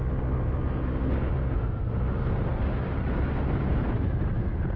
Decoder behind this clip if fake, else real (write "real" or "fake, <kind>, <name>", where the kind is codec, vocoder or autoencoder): real